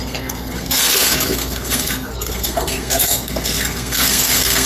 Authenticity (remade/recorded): remade